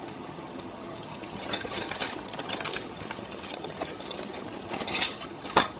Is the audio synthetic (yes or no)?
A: yes